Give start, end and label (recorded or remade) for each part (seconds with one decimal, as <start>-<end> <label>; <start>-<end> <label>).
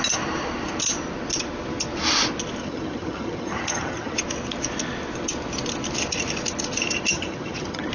0.0-2.6 recorded; 2.6-4.2 remade; 4.2-7.1 recorded; 7.1-7.9 remade